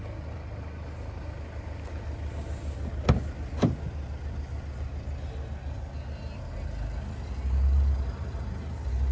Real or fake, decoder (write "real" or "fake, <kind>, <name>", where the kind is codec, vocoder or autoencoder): real